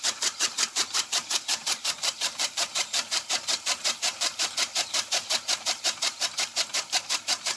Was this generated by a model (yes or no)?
yes